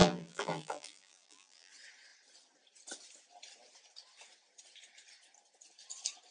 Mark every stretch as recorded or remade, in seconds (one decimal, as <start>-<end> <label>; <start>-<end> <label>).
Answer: 0.0-1.7 remade; 1.7-6.3 recorded

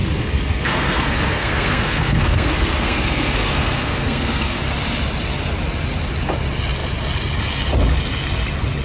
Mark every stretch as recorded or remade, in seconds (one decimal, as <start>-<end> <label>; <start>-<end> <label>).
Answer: 0.0-4.6 remade; 4.6-8.8 recorded

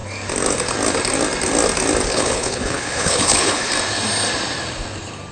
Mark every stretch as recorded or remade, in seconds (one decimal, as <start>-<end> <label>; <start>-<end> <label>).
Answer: 0.0-2.1 recorded; 2.1-3.7 remade; 3.7-5.3 recorded

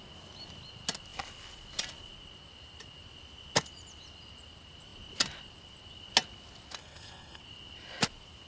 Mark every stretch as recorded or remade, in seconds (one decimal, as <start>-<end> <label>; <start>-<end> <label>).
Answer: 0.0-6.8 recorded; 6.8-7.4 remade; 7.4-8.5 recorded

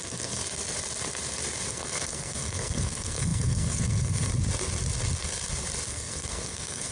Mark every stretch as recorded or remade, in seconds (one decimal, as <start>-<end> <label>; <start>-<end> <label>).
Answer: 0.0-0.4 remade; 0.4-1.7 recorded; 1.7-4.3 remade; 4.3-5.9 recorded; 5.9-6.9 remade

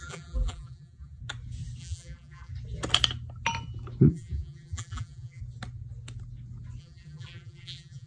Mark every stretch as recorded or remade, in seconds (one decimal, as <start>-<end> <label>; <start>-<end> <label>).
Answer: 0.0-1.2 remade; 1.2-1.8 recorded; 1.8-2.5 remade; 2.5-4.1 recorded; 4.1-5.4 remade; 5.4-6.8 recorded; 6.8-8.1 remade

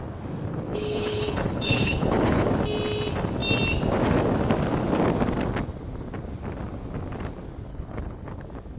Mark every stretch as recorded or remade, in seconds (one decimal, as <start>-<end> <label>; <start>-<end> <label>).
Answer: 0.0-0.7 recorded; 0.7-2.5 remade; 2.5-7.7 recorded; 7.7-8.3 remade; 8.3-8.8 recorded

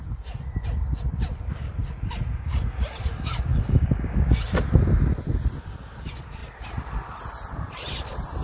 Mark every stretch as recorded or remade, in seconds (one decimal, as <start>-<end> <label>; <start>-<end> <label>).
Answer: 0.0-3.5 recorded; 3.5-4.4 remade; 4.4-8.4 recorded